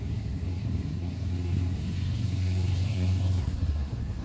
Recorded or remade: remade